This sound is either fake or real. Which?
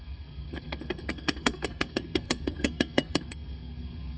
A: fake